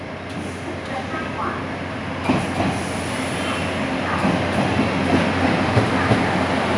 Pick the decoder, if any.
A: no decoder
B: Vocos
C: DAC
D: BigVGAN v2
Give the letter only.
A